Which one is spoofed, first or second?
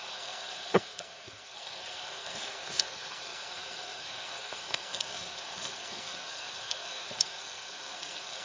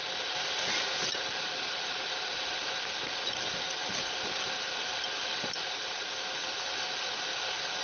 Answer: first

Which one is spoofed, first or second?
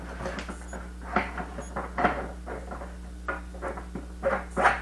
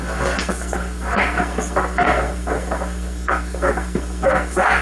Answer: second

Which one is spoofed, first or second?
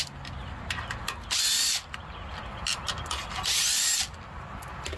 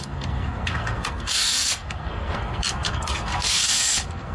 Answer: second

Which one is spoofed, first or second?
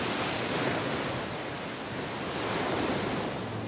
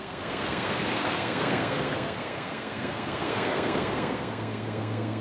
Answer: second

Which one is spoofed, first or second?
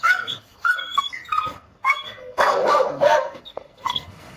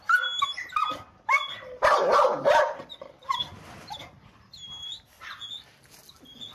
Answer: first